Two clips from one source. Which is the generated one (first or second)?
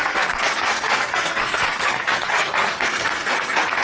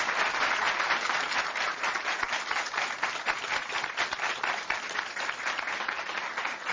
first